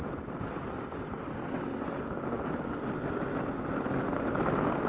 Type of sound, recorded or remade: recorded